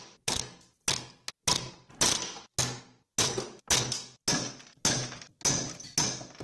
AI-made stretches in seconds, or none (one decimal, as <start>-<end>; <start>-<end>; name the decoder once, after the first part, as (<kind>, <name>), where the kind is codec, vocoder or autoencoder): none